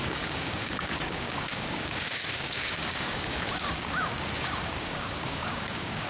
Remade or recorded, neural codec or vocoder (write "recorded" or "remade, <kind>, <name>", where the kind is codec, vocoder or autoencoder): remade, codec, DAC